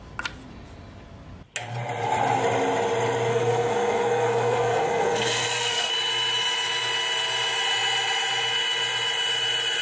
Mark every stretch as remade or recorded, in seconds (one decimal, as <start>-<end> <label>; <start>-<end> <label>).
0.0-3.3 recorded; 3.3-5.9 remade; 5.9-9.8 recorded